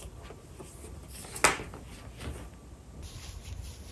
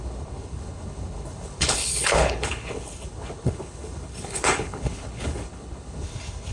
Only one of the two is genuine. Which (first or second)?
first